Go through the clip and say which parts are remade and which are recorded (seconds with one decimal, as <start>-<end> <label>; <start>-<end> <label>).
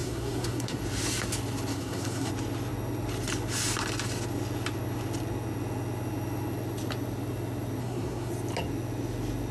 0.0-0.8 remade; 0.8-1.7 recorded; 1.7-2.3 remade; 2.3-7.8 recorded; 7.8-8.3 remade; 8.3-9.5 recorded